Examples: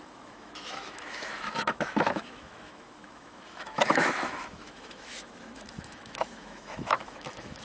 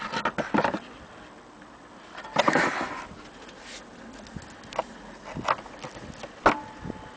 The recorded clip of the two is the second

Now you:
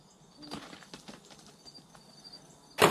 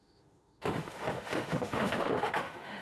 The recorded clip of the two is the first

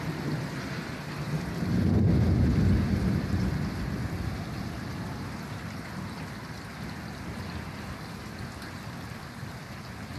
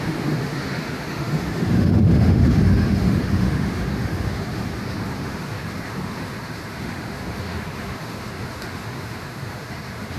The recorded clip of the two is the first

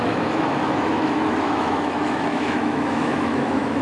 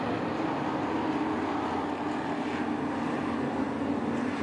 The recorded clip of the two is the second